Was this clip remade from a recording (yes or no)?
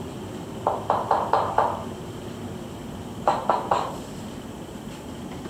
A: yes